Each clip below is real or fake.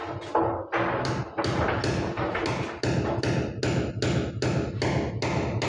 real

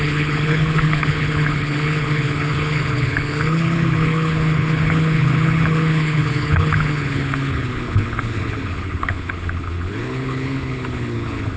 fake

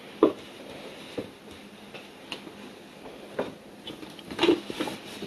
real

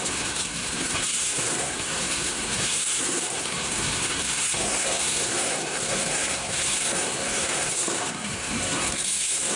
fake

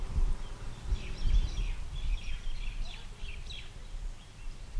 real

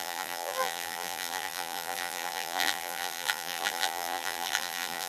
fake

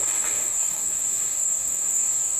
fake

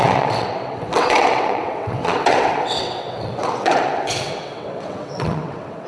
fake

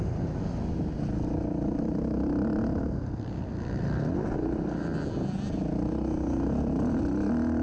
real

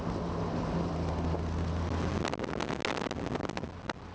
real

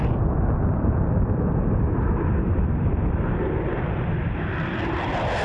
fake